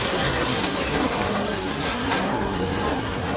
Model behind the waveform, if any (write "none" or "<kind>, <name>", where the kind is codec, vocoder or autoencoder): codec, SNAC